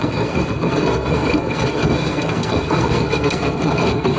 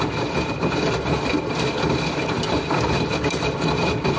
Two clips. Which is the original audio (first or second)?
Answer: second